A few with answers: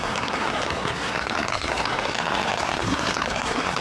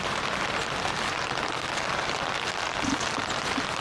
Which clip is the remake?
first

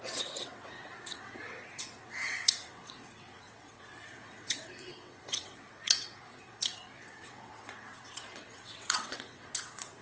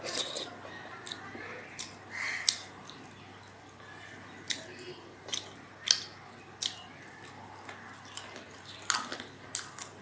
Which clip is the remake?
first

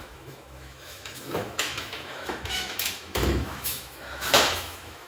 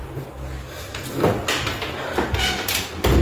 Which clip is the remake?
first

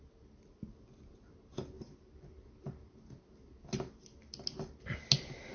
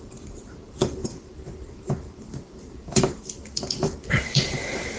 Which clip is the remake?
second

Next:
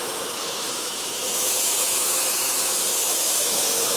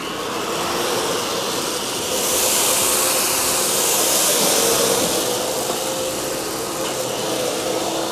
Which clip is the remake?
first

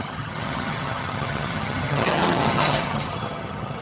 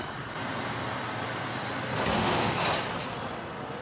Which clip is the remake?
first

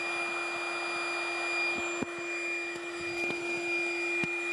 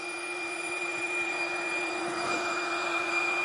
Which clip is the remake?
second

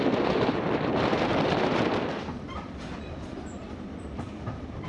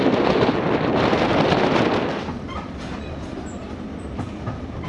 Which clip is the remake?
first